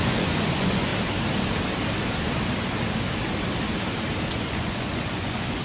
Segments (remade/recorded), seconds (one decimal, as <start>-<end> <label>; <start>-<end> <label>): 0.0-0.9 remade; 0.9-4.3 recorded; 4.3-5.6 remade

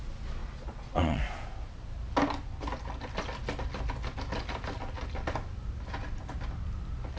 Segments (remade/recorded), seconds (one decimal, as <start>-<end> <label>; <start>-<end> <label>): 0.0-0.4 recorded; 0.4-1.2 remade; 1.2-7.2 recorded